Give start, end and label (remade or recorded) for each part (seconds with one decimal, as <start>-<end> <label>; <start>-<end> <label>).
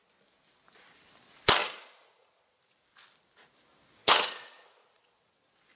0.0-1.6 recorded; 1.6-2.7 remade; 2.7-4.0 recorded; 4.0-5.3 remade; 5.3-5.8 recorded